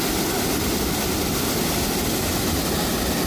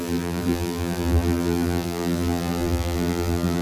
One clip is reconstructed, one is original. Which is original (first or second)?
first